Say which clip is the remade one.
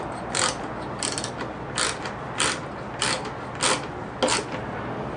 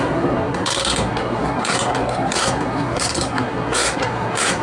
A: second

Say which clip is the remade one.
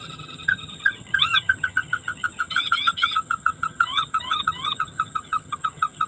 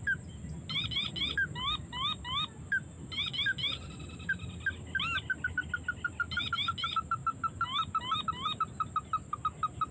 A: first